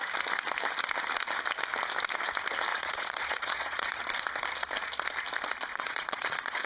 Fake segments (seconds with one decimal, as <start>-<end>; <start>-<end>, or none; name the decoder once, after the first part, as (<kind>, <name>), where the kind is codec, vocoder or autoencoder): 2.7-4.0 (vocoder, Vocos); 5.7-6.7